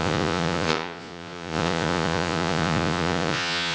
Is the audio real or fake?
fake